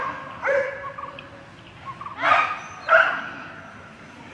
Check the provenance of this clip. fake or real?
real